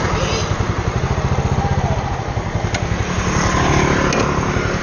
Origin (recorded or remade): recorded